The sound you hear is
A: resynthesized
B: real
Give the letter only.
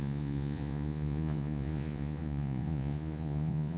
A